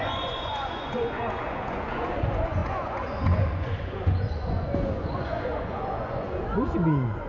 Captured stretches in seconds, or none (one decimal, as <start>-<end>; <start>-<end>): none